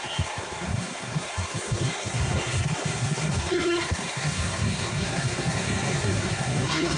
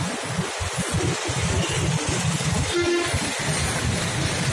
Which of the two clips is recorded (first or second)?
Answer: second